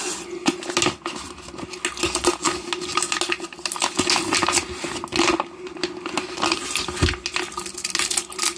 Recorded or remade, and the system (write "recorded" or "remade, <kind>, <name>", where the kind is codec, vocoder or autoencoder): recorded